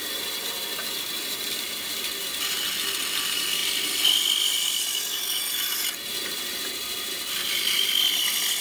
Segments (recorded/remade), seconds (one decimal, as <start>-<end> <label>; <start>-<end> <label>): 0.0-3.6 remade; 3.6-5.5 recorded; 5.5-8.6 remade